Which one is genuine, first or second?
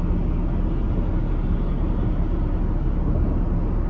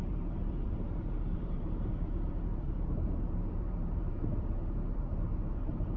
first